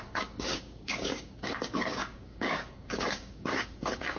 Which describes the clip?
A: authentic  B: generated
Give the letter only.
B